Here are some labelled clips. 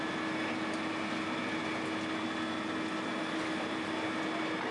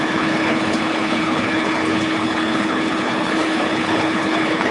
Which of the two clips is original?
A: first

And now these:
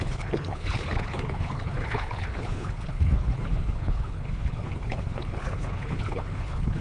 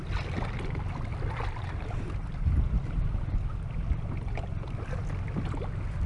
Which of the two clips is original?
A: second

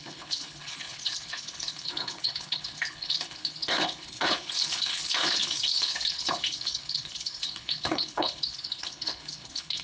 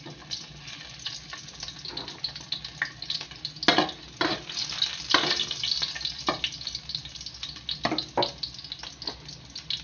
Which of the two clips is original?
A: second